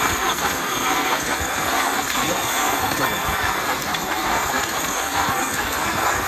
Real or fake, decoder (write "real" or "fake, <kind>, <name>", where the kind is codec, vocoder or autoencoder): fake, codec, SNAC